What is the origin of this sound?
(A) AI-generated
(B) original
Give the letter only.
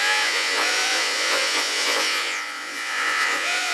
A